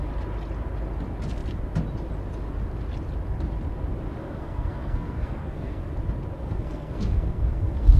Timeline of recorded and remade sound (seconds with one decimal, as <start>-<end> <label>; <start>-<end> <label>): 0.0-4.2 recorded; 4.2-5.8 remade; 5.8-6.4 recorded; 6.4-8.0 remade